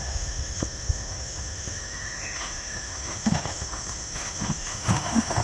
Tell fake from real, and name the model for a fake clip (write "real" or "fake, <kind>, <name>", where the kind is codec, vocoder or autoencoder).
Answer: fake, autoencoder, DAC-VAE